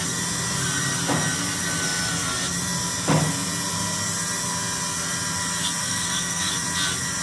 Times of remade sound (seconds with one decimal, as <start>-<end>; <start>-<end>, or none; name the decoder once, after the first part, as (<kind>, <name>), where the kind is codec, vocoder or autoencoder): 5.8-6.5 (codec, SNAC)